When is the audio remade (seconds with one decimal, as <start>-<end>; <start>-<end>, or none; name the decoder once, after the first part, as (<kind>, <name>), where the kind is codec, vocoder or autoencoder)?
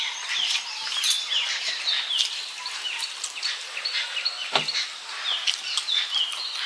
0.0-0.8 (vocoder, BigVGAN v2); 4.4-5.6